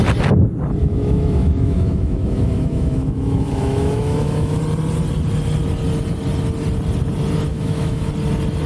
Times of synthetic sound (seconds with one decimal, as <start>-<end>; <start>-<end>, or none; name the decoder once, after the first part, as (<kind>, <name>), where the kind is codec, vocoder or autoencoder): 0.8-4.6 (autoencoder, DAC-VAE); 7.5-8.1